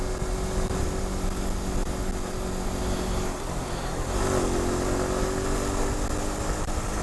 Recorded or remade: recorded